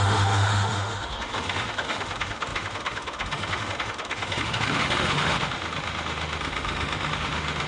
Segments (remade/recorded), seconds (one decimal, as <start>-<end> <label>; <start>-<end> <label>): 0.0-7.7 remade